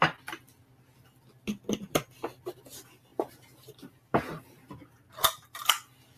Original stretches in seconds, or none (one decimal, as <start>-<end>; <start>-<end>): 0.0-3.1; 5.1-6.2